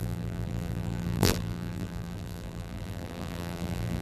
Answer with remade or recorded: remade